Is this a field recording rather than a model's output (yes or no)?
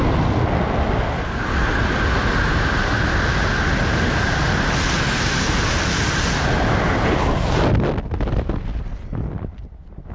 yes